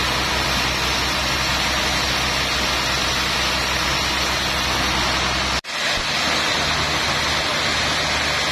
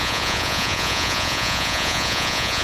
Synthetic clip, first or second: second